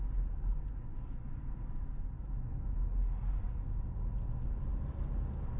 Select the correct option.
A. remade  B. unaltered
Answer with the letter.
B